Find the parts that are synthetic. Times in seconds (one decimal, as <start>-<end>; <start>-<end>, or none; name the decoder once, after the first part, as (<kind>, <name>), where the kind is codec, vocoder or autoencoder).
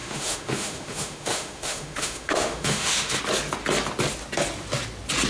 0.0-3.2 (autoencoder, DAC-VAE)